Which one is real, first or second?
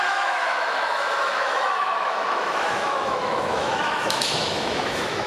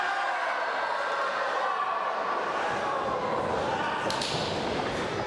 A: second